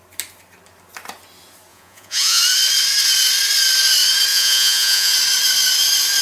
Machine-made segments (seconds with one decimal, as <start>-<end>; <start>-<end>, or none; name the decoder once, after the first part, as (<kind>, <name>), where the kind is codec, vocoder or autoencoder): 1.7-2.4 (vocoder, Vocos); 4.3-5.1